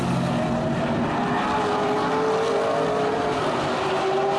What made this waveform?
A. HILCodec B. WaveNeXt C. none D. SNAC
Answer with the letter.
C